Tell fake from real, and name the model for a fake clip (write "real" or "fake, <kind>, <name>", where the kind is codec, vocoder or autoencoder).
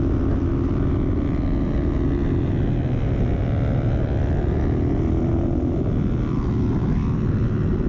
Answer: real